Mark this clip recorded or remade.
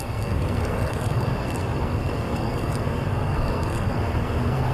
remade